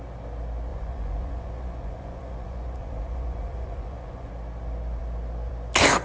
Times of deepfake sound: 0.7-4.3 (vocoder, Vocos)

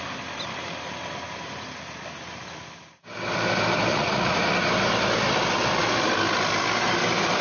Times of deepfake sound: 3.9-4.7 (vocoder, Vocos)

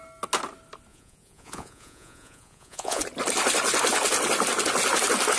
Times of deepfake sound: 0.9-3.0 (vocoder, Vocos)

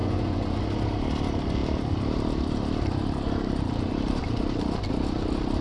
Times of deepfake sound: 0.0-0.6 (vocoder, Vocos)

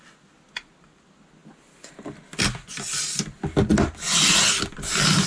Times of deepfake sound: none